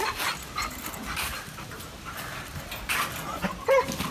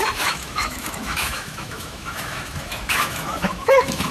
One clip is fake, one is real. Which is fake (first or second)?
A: second